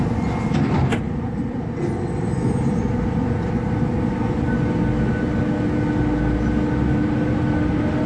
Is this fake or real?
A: real